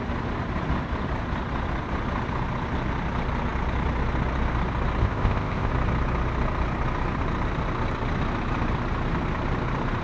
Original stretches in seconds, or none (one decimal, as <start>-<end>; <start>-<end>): 0.0-5.0; 5.7-10.0